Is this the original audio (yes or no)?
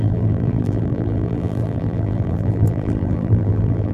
no